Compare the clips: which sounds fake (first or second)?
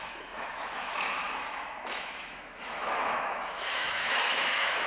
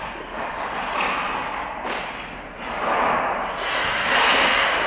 first